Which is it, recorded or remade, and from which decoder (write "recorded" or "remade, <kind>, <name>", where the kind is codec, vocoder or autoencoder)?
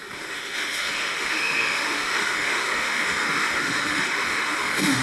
remade, autoencoder, DAC-VAE